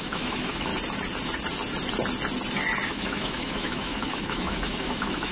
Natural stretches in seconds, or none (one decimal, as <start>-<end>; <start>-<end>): 0.7-2.9